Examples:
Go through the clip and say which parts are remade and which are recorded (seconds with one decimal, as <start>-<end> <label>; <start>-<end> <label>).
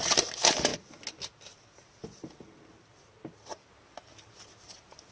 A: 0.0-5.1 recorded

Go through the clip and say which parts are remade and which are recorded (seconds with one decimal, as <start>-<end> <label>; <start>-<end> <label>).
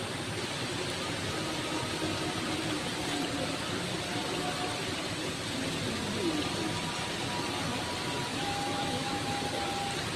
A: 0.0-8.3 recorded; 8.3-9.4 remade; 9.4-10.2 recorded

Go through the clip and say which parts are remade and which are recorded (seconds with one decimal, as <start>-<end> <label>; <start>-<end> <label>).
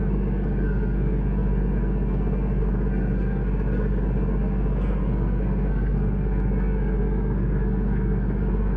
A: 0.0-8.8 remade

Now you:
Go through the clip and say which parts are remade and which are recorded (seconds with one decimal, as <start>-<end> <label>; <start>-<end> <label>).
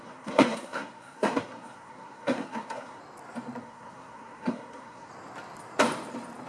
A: 0.0-3.0 remade; 3.0-3.6 recorded; 3.6-5.1 remade; 5.1-6.5 recorded